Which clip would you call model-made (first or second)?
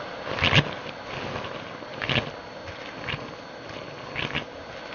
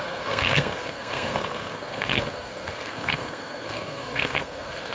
second